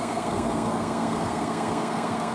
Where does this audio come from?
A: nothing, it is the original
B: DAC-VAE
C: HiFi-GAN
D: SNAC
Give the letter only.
D